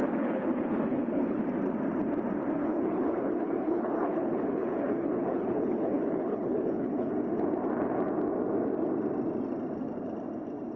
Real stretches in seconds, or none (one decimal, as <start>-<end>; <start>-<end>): 1.4-2.6; 7.1-10.8